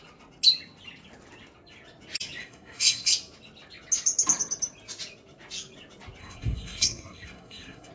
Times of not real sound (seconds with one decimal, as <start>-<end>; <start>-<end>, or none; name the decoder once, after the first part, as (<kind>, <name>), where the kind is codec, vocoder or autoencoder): 2.4-3.1 (codec, SNAC); 6.2-7.9